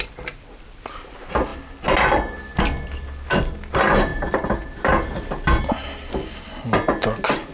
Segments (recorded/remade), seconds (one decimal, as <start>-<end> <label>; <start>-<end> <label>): 0.0-7.5 recorded